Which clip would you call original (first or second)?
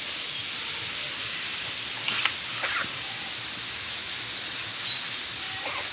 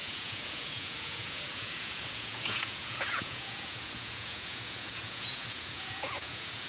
first